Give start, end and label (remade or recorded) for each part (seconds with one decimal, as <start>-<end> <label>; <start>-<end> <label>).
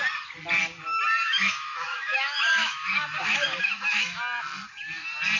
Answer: 0.0-1.2 recorded; 1.2-4.2 remade; 4.2-5.4 recorded